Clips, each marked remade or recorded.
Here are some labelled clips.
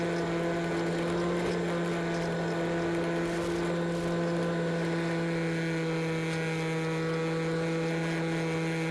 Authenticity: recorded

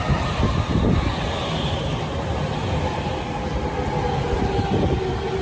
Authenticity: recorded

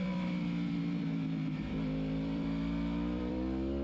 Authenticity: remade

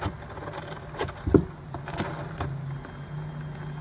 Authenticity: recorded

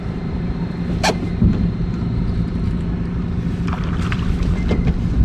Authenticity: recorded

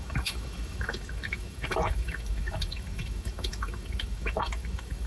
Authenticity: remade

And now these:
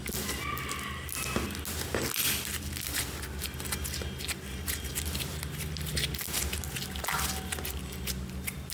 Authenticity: recorded